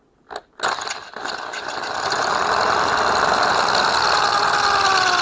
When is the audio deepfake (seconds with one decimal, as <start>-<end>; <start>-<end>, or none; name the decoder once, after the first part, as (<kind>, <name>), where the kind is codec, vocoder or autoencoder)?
none